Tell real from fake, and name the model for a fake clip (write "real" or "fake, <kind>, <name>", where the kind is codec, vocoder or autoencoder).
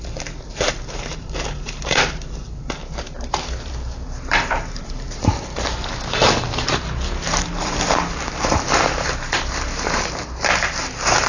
fake, vocoder, BigVGAN v2